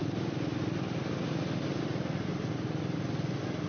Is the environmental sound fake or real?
real